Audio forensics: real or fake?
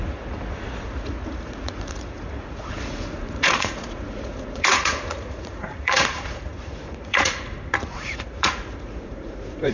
fake